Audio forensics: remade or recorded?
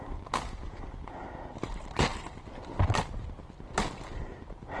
recorded